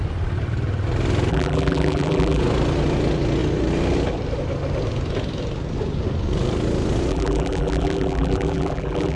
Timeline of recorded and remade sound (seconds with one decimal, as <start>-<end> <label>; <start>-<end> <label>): 0.0-1.3 recorded; 1.3-2.4 remade; 2.4-7.1 recorded; 7.1-9.2 remade